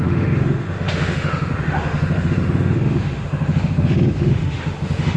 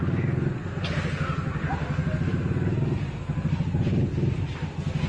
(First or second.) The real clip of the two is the second